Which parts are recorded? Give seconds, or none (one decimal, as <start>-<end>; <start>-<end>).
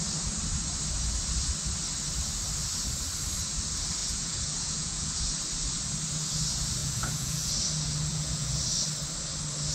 0.0-4.0; 5.2-6.8; 7.5-8.1; 8.6-9.7